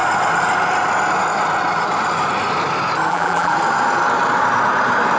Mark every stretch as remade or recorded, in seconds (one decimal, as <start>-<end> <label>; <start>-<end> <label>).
0.0-3.1 recorded; 3.1-3.5 remade; 3.5-5.2 recorded